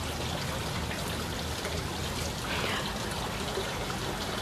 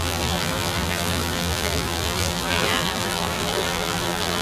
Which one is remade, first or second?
second